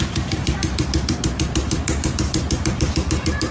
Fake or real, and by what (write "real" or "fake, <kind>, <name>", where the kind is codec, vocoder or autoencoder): fake, vocoder, BigVGAN v2